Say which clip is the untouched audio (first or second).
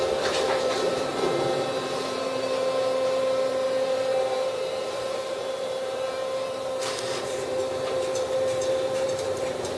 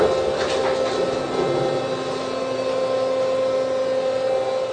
second